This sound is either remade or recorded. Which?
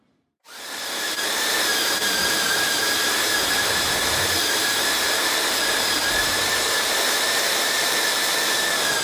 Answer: remade